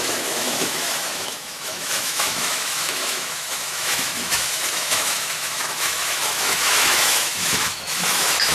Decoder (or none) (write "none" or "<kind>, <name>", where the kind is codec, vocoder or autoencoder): autoencoder, DAC-VAE